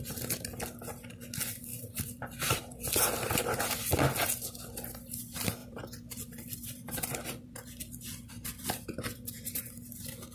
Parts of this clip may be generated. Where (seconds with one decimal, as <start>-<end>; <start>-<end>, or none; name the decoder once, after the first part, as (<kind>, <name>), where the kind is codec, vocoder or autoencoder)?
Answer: 1.7-3.3 (vocoder, BigVGAN v2); 5.6-9.6